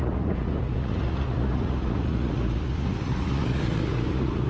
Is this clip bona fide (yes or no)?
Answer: no